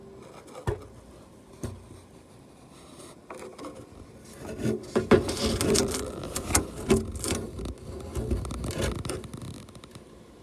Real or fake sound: real